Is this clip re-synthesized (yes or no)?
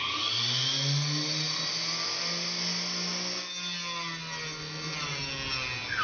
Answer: no